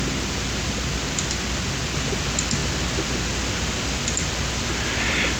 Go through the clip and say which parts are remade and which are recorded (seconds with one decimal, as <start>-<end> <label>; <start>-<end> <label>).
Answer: 0.0-5.4 recorded